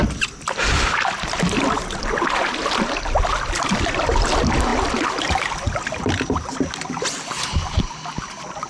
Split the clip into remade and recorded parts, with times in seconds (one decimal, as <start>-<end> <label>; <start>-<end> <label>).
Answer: 0.0-8.7 recorded